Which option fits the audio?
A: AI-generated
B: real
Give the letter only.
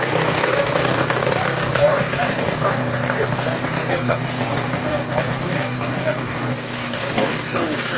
A